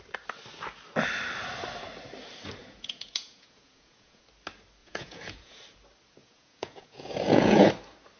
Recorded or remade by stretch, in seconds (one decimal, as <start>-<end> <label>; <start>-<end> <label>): 0.0-2.6 recorded; 2.6-4.2 remade; 4.2-4.8 recorded; 4.8-5.6 remade; 5.6-6.2 recorded; 6.2-7.7 remade; 7.7-8.2 recorded